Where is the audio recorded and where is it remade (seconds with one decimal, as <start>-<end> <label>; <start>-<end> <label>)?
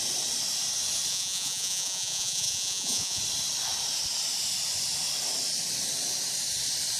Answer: 0.0-1.1 recorded; 1.1-3.2 remade; 3.2-7.0 recorded